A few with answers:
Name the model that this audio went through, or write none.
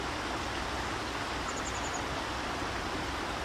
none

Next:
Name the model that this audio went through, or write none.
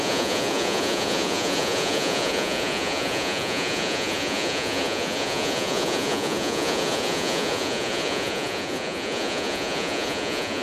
vocoder, Vocos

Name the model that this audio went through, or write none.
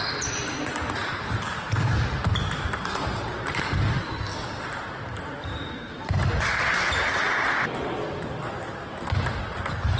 none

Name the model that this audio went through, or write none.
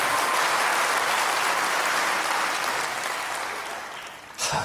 none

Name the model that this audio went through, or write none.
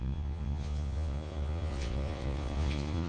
vocoder, Vocos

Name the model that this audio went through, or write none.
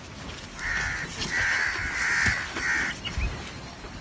none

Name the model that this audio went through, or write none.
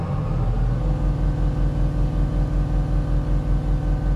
none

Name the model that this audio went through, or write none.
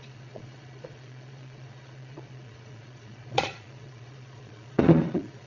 vocoder, Vocos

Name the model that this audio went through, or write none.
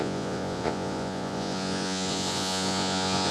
vocoder, Vocos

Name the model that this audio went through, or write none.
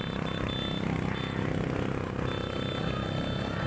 none